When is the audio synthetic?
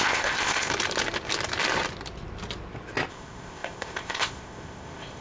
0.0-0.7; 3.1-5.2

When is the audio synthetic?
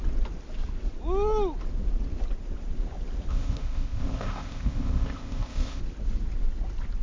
3.3-5.8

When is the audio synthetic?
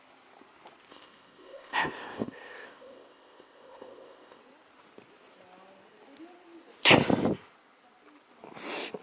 0.9-4.4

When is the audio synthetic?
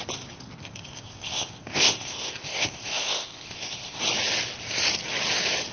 0.6-4.0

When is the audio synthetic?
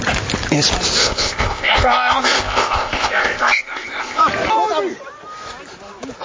1.0-4.2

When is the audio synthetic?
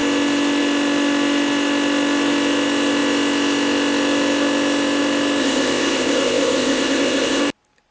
5.4-7.4